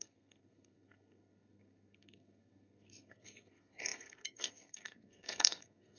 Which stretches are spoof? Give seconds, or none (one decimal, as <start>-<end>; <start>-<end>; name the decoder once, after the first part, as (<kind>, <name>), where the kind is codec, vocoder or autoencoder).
0.0-6.0 (codec, SNAC)